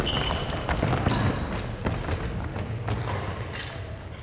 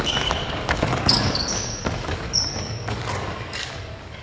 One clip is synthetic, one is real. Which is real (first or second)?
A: first